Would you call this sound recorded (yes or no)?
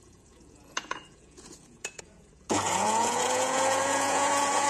no